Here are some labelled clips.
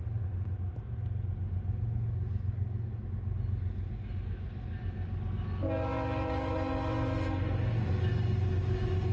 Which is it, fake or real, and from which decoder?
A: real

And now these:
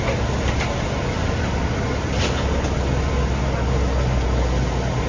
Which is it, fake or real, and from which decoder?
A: real